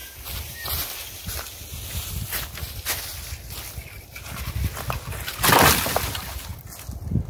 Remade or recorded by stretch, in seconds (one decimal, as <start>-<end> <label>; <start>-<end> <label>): 0.0-7.3 recorded